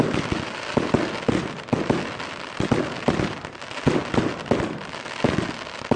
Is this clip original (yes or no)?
yes